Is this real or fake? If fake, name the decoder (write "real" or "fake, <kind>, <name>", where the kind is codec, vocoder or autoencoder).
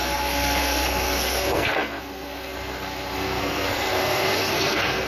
fake, codec, SNAC